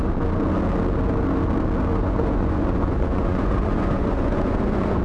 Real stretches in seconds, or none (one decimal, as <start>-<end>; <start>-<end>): 0.0-1.9